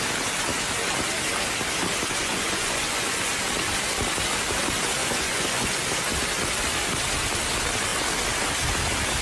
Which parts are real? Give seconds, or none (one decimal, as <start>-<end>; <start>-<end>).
0.0-2.2; 3.3-5.0; 5.8-9.2